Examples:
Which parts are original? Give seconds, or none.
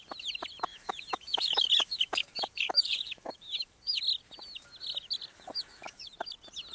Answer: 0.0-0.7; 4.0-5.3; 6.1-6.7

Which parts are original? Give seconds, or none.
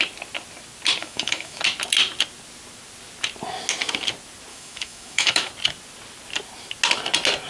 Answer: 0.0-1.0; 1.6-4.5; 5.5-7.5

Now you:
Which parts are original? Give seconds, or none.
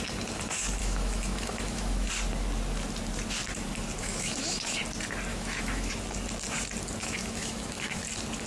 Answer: 0.0-0.8; 2.1-4.0; 4.8-5.3; 5.9-7.0; 8.0-8.5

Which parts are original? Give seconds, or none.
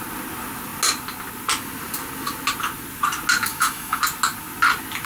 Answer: 0.0-3.5; 4.0-5.1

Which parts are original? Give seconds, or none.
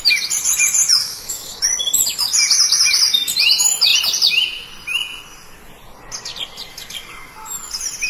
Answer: 0.0-1.0; 1.6-8.1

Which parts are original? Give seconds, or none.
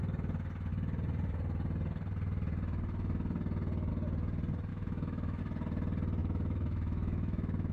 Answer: 0.0-4.7; 5.4-6.2